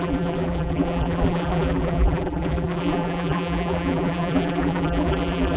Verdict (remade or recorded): remade